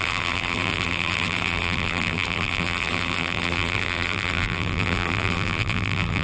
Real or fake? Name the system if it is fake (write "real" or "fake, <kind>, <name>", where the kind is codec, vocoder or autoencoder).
fake, vocoder, BigVGAN v2